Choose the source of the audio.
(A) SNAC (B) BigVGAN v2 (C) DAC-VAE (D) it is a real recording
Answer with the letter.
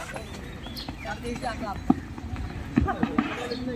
D